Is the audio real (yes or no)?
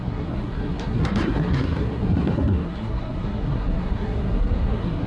no